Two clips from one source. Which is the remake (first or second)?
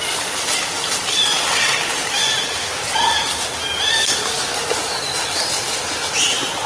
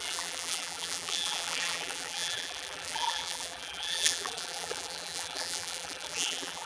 second